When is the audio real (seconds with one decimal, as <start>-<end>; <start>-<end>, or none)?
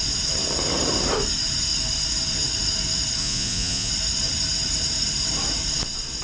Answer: 0.0-3.2; 3.9-6.2